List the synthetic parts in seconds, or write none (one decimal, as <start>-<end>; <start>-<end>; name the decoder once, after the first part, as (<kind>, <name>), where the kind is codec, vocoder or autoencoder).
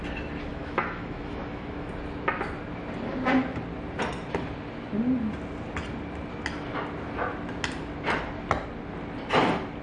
0.5-1.9 (autoencoder, DAC-VAE)